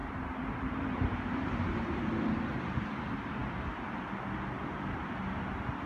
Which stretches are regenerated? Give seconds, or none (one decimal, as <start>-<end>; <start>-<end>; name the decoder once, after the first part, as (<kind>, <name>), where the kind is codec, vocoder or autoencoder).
0.0-2.0 (vocoder, BigVGAN v2)